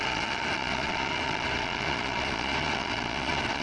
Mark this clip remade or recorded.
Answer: remade